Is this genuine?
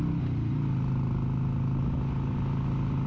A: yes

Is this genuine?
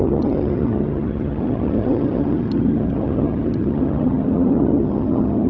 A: no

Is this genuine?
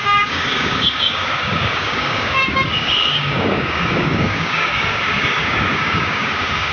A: no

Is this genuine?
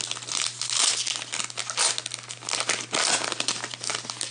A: yes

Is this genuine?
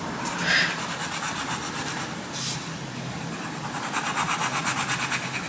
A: yes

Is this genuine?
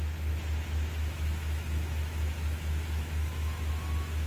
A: no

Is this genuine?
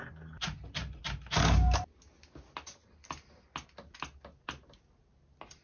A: yes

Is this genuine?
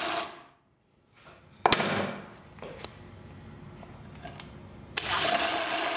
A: yes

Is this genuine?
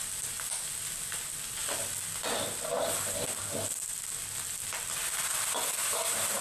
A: yes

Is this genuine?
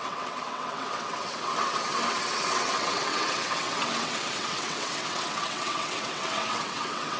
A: no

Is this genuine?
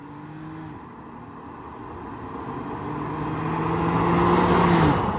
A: yes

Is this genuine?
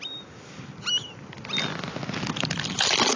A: yes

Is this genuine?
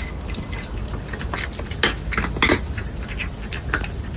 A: yes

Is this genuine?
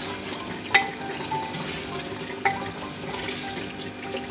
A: yes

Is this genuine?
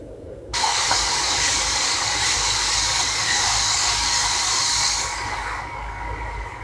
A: no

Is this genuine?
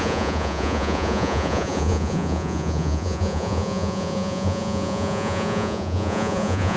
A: no